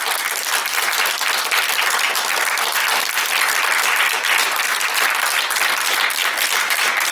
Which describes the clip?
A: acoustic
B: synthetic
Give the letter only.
A